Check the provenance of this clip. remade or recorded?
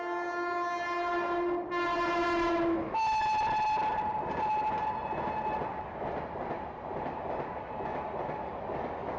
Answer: recorded